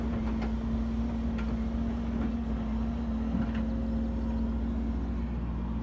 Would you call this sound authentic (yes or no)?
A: yes